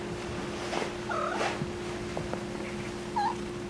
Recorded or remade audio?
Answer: recorded